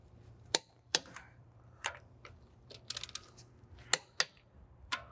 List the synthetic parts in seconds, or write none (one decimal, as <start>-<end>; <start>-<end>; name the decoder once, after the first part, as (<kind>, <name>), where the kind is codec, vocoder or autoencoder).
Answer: 0.0-2.7 (vocoder, BigVGAN v2)